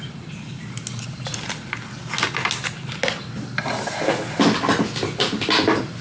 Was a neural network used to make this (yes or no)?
no